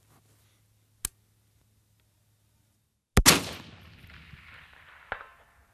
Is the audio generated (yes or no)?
no